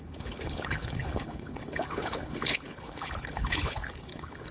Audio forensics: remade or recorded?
remade